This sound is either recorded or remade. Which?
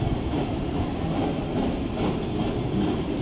recorded